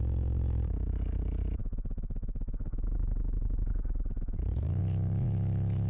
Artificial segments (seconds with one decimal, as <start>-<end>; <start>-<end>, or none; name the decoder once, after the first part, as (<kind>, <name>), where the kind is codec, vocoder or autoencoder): 0.0-5.9 (autoencoder, DAC-VAE)

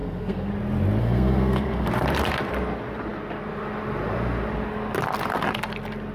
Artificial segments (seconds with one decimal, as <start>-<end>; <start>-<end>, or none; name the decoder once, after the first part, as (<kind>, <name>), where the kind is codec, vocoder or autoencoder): 0.0-0.5 (codec, SNAC); 1.0-1.9

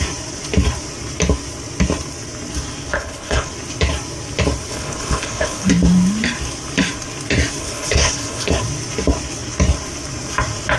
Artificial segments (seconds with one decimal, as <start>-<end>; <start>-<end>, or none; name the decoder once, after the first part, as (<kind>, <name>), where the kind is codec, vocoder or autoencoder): 2.9-3.5 (codec, HILCodec); 4.7-5.7; 7.6-8.5

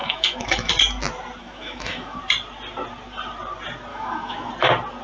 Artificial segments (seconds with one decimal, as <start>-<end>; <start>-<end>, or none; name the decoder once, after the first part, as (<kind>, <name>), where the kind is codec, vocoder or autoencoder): 0.0-0.7 (autoencoder, DAC-VAE); 1.4-2.2; 3.9-4.5